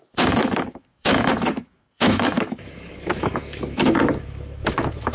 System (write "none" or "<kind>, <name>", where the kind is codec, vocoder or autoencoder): autoencoder, DAC-VAE